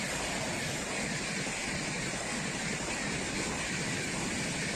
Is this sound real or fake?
real